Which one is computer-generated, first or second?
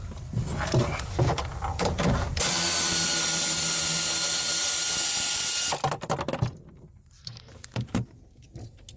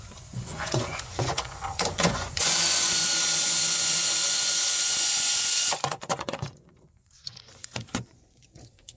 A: second